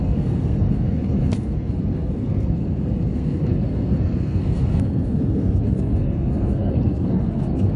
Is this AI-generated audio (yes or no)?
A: yes